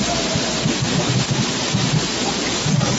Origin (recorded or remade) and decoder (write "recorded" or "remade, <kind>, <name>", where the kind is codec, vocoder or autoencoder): recorded